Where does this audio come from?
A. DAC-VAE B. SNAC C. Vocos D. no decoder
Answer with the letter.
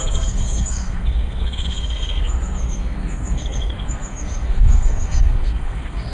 B